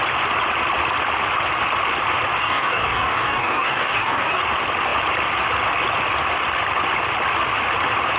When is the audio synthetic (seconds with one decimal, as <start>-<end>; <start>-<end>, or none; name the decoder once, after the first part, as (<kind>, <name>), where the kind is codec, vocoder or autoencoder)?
2.4-4.4 (codec, DAC)